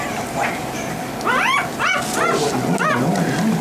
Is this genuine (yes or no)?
yes